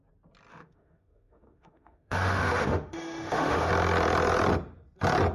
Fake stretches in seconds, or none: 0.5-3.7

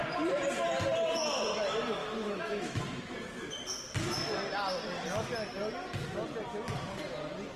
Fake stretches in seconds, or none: 2.0-2.8

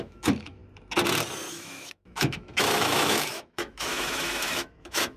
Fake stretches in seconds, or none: 0.0-0.6; 1.5-5.2

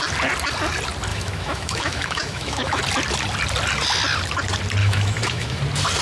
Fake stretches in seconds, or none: 1.1-2.8; 4.8-5.6

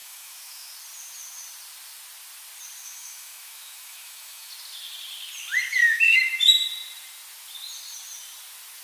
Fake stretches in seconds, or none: 0.0-0.7; 2.8-4.5; 5.8-6.4

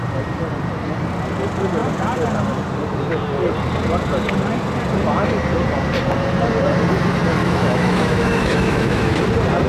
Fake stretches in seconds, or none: 7.4-9.2